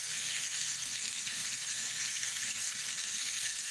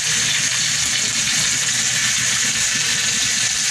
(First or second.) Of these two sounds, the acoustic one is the second